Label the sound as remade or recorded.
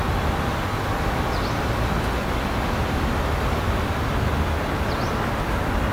recorded